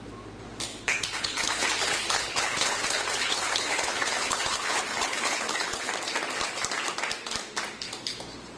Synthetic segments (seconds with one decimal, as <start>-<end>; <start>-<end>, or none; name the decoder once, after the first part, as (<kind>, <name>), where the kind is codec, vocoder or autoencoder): 0.7-5.9 (codec, HILCodec)